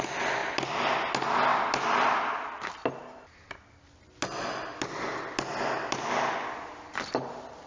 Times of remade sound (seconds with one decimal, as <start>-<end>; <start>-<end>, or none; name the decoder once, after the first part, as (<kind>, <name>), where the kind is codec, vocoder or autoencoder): none